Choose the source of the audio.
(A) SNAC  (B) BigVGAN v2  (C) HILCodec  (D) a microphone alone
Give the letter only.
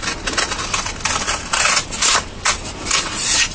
D